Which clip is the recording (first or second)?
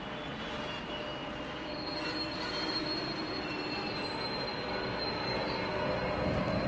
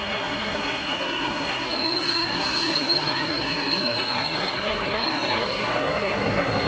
first